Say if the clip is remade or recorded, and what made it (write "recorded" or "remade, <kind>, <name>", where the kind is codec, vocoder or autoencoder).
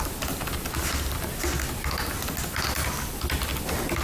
recorded